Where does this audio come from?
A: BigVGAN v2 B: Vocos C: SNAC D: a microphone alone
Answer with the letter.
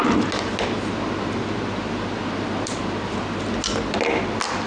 D